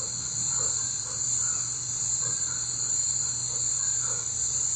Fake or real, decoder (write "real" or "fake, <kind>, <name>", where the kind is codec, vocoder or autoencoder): fake, vocoder, BigVGAN v2